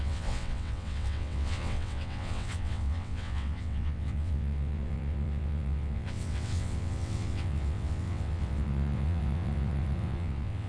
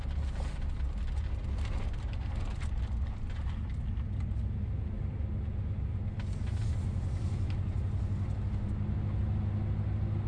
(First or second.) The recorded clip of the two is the second